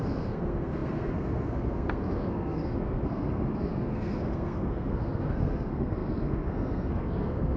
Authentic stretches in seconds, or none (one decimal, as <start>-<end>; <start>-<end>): none